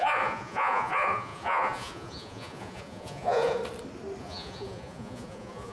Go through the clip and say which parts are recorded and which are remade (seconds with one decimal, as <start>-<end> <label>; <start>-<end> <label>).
0.0-3.6 remade; 3.6-4.2 recorded; 4.2-5.7 remade